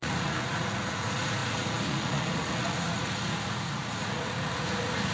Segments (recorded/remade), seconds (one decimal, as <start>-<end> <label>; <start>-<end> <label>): 0.0-5.1 remade